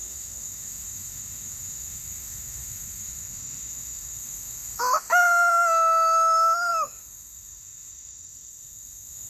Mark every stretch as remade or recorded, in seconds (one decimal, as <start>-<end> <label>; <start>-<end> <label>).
0.0-9.3 remade